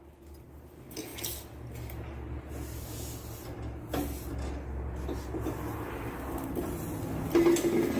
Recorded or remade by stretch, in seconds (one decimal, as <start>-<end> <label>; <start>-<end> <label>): 0.0-8.0 recorded